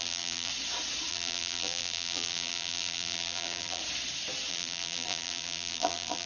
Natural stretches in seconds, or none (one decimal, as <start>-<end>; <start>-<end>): 0.5-1.1; 3.8-4.5